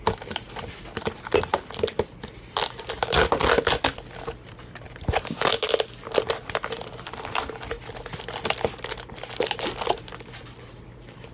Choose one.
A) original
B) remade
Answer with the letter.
A